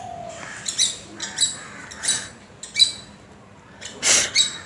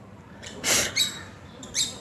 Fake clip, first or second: second